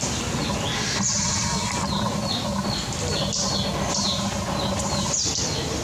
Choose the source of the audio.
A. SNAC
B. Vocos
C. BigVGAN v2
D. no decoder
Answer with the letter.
D